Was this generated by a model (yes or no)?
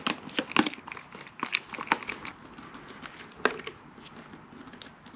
no